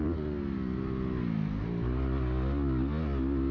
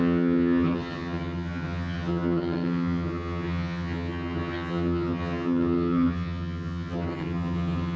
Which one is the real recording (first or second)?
first